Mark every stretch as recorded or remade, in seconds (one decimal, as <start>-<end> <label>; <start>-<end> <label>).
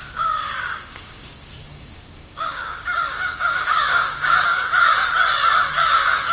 0.0-4.9 remade; 4.9-5.5 recorded; 5.5-6.3 remade